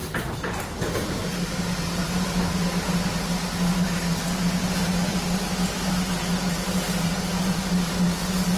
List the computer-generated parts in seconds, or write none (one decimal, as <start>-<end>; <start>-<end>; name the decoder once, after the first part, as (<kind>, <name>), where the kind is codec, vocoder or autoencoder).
none